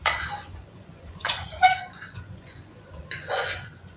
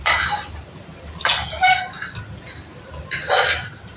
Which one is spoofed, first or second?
first